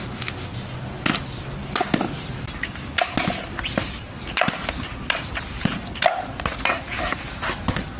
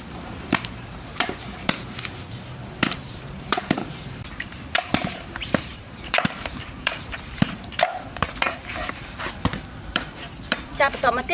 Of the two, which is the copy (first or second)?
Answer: second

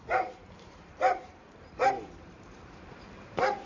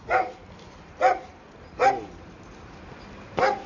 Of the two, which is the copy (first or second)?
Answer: first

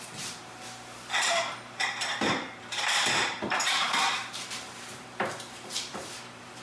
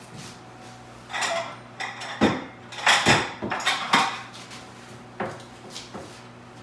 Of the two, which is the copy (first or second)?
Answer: first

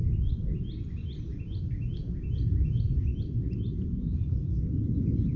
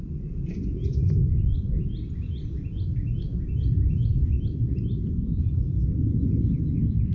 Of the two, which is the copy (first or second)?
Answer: second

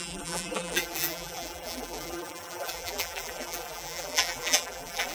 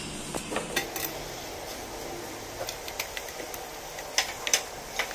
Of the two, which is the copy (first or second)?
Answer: first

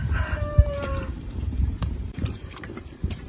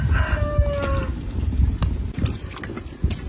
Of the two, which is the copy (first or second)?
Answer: first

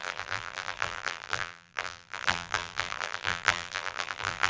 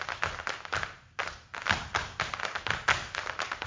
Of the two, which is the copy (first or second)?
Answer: first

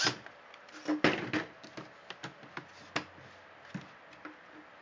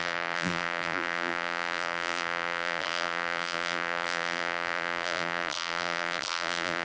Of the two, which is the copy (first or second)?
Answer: second